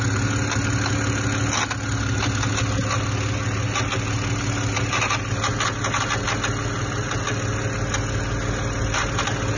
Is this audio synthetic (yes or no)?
no